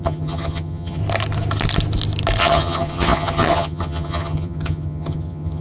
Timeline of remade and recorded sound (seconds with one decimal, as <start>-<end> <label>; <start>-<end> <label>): 0.0-1.0 remade; 1.0-2.4 recorded; 2.4-5.6 remade